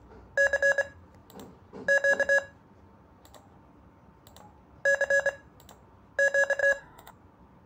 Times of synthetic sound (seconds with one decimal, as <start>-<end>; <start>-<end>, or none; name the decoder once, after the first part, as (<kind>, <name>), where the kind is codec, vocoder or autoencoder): 6.6-7.1 (autoencoder, DAC-VAE)